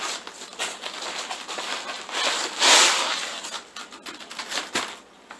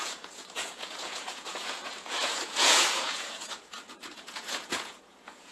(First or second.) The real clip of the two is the first